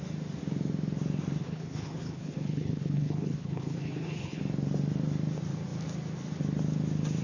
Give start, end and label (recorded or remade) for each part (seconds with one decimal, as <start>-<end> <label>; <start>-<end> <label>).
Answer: 0.0-1.4 recorded; 1.4-4.4 remade; 4.4-7.2 recorded